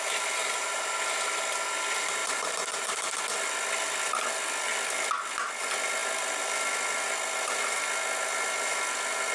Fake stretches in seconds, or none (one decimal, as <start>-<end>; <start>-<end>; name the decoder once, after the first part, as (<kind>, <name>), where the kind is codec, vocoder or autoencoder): 0.4-0.9 (vocoder, BigVGAN v2); 2.2-3.2